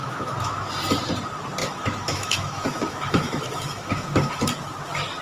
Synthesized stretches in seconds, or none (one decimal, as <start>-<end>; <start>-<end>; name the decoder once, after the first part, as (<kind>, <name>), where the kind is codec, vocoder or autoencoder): 0.0-0.7 (autoencoder, DAC-VAE); 1.6-4.3

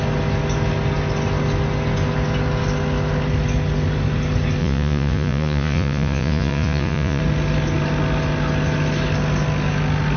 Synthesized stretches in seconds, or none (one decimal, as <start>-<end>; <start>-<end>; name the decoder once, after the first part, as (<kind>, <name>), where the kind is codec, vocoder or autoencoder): 4.6-7.2 (vocoder, Vocos)